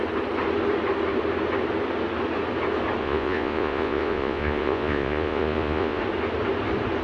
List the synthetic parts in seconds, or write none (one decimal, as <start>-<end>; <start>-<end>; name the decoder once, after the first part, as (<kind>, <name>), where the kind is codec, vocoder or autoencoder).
3.0-6.0 (vocoder, Vocos)